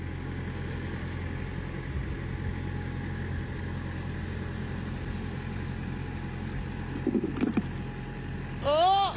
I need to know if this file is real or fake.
real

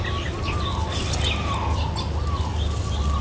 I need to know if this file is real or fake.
real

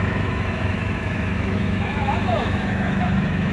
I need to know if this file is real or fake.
fake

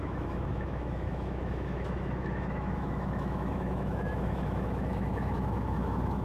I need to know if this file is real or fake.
fake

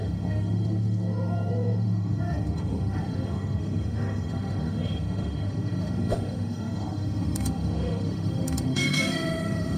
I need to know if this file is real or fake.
fake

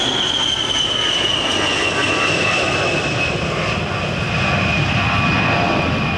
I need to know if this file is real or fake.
real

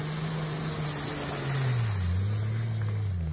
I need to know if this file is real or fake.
real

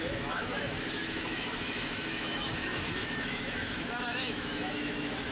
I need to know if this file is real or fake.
fake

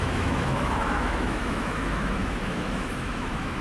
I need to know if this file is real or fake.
fake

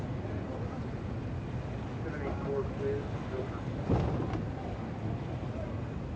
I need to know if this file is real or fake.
real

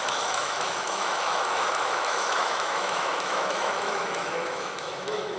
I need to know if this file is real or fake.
fake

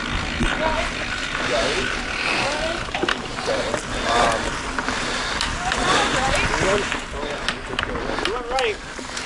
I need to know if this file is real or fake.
real